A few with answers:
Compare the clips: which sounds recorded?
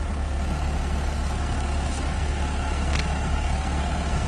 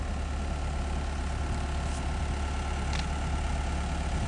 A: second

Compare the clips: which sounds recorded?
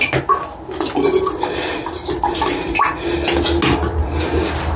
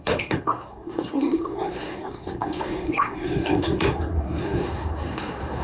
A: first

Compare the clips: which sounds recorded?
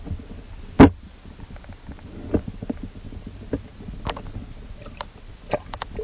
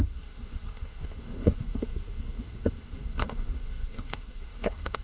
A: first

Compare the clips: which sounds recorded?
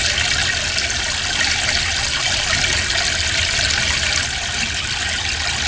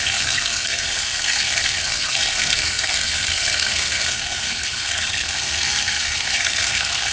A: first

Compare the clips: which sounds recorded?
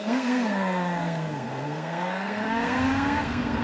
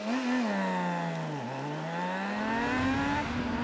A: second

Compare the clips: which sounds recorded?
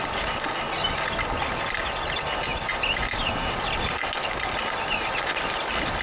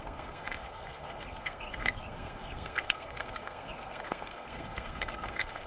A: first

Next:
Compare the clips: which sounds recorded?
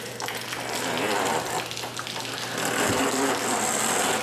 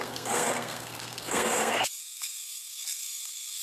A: first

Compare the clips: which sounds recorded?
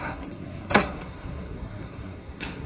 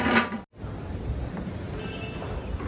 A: second